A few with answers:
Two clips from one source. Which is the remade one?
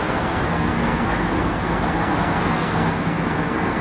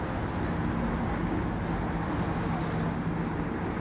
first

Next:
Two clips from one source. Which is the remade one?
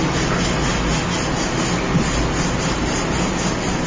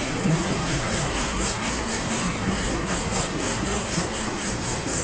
second